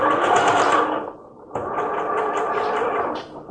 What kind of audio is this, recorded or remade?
recorded